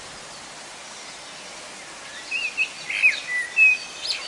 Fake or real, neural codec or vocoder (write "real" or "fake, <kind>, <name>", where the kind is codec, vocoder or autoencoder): real